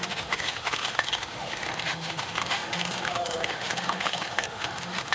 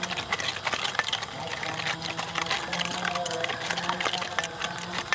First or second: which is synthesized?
first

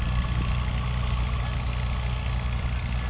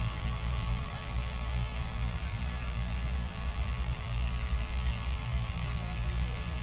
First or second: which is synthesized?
second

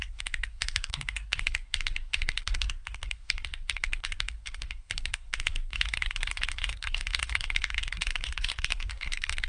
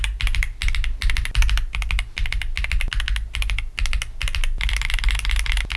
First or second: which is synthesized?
first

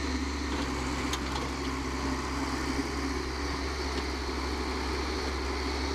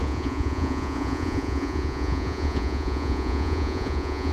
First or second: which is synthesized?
second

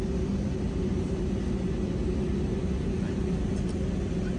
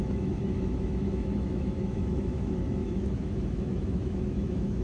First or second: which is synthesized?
second